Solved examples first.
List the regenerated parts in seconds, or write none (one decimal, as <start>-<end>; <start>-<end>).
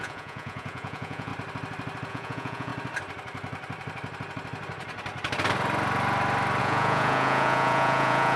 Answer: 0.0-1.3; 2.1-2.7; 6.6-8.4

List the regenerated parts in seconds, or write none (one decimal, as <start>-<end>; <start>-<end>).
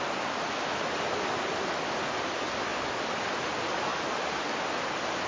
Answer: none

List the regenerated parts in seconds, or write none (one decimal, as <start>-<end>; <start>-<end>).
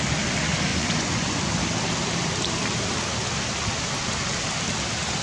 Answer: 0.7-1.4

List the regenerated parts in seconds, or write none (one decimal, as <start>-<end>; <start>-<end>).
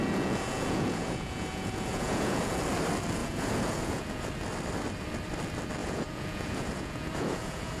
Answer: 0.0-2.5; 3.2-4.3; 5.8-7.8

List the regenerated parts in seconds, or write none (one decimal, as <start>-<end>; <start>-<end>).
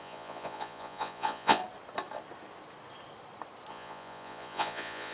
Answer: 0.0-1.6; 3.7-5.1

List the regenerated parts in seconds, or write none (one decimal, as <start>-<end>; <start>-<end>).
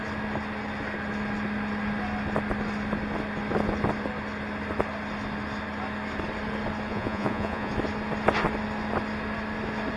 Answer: 6.9-7.7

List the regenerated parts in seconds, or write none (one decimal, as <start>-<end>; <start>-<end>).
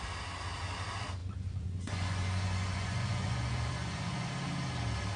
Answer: 1.2-4.3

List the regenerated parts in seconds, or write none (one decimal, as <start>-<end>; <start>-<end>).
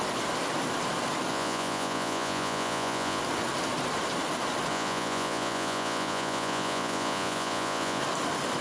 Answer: 1.3-3.2; 4.7-8.0